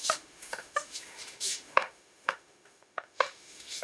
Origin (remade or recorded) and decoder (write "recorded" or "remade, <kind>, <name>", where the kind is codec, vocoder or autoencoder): remade, autoencoder, DAC-VAE